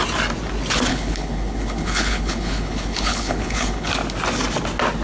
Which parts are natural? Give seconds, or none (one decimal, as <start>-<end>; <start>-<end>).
0.0-0.9; 3.9-5.0